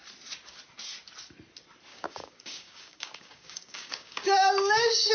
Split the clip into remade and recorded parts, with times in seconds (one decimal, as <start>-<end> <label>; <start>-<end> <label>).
0.0-1.9 recorded; 1.9-5.1 remade